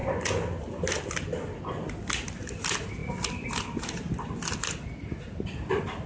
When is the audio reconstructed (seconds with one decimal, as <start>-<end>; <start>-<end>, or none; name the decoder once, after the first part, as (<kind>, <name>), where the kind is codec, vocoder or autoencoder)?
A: none